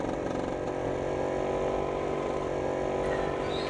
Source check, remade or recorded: recorded